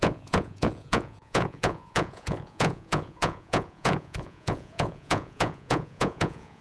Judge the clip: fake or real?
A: fake